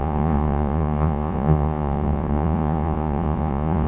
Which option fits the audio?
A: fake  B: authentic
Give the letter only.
A